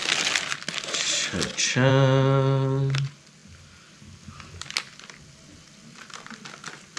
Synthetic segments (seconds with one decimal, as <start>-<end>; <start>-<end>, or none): none